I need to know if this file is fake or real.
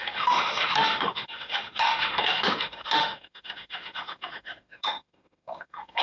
fake